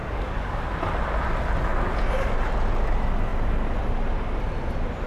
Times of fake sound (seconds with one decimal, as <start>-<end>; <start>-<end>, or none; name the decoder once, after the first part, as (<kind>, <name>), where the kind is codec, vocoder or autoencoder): 0.0-0.6 (codec, DAC)